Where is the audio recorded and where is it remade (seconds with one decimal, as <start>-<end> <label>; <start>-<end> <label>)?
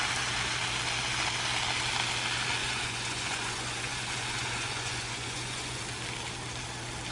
0.0-2.6 recorded; 2.6-5.8 remade; 5.8-7.1 recorded